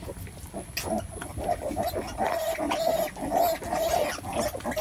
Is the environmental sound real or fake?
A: real